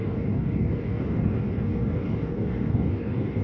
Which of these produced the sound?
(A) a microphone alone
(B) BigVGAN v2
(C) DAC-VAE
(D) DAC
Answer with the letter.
D